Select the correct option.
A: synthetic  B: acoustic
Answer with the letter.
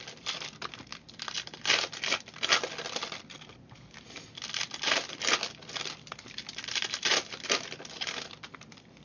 B